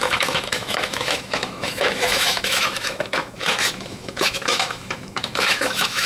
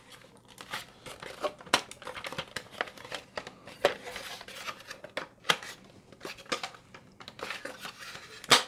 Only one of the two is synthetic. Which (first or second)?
first